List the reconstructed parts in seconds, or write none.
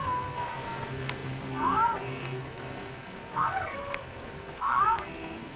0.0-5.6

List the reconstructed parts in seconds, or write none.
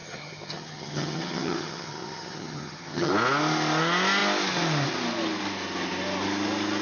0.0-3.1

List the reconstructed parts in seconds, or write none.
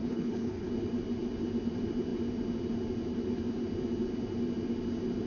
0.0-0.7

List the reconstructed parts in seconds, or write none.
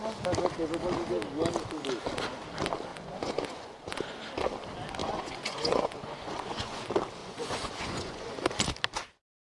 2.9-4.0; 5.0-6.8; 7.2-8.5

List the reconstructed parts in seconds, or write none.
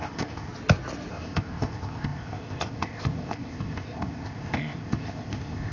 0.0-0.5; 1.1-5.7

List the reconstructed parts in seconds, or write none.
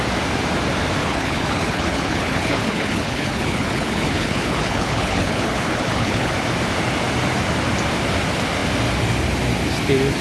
1.0-6.3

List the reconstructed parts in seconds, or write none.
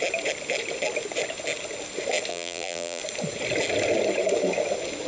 2.3-3.0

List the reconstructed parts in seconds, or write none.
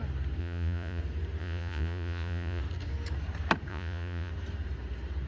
0.4-1.0; 1.4-2.6; 3.7-4.3